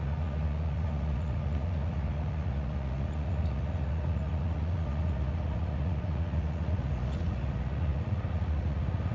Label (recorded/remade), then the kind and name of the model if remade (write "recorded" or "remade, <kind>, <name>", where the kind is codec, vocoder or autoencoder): remade, vocoder, Vocos